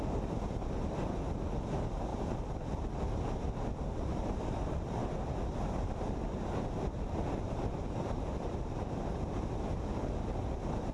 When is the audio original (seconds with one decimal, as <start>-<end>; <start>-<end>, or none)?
0.0-10.9